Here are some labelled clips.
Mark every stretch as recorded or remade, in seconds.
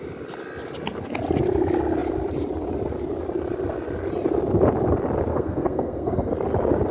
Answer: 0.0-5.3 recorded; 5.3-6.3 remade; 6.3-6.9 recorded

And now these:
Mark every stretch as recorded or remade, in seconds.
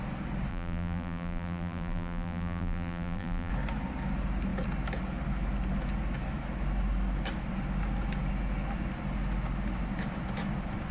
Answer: 0.0-0.5 recorded; 0.5-3.5 remade; 3.5-10.9 recorded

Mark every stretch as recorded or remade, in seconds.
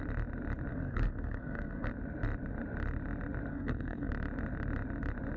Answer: 0.0-0.7 recorded; 0.7-1.9 remade; 1.9-3.5 recorded; 3.5-4.1 remade; 4.1-5.4 recorded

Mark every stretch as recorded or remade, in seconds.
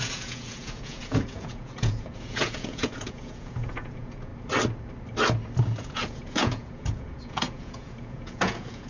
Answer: 0.0-4.3 remade; 4.3-5.6 recorded; 5.6-8.9 remade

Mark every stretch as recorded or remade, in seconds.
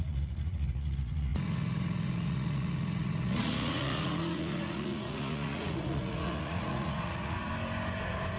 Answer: 0.0-7.5 remade; 7.5-8.4 recorded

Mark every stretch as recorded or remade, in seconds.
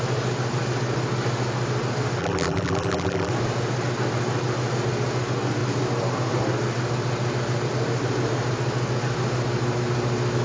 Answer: 0.0-2.2 recorded; 2.2-3.3 remade; 3.3-10.4 recorded